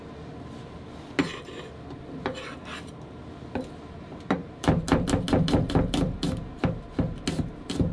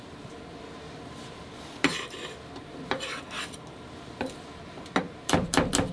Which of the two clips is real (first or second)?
first